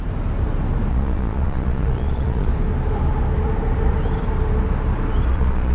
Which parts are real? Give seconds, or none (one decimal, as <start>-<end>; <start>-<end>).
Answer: 0.0-0.9; 2.5-5.3